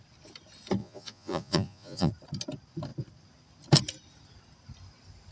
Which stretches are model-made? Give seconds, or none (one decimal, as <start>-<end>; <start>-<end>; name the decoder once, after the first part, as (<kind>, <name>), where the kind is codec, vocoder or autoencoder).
0.8-2.1 (vocoder, Vocos)